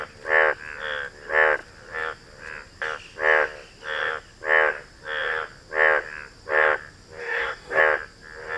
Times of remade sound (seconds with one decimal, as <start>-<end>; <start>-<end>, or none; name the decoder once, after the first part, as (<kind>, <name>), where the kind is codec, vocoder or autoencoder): 7.2-7.8 (codec, DAC)